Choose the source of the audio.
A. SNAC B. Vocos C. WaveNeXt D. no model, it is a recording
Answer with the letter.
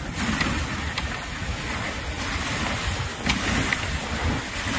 D